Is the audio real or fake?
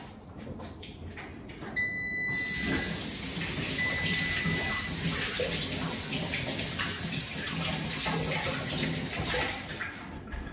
real